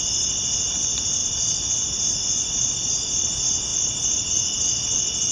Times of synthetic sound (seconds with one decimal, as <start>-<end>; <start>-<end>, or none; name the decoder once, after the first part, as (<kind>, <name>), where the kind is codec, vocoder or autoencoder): none